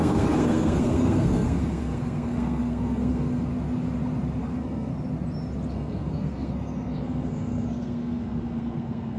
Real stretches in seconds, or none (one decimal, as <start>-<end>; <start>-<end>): 3.5-4.4; 4.9-5.7

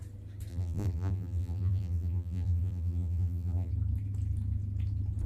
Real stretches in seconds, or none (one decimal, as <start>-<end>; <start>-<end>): 0.0-0.5; 3.7-5.3

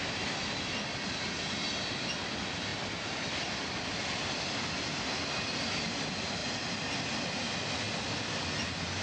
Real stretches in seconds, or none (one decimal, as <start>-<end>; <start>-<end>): 0.0-9.0

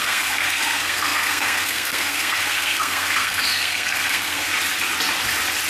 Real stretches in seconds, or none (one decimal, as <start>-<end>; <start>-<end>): 4.5-5.7

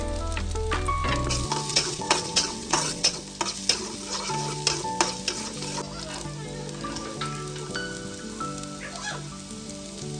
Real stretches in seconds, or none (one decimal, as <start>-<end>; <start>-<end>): 0.0-1.7; 3.2-10.2

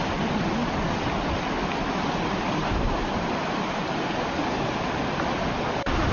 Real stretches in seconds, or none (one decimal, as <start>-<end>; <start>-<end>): 0.0-6.1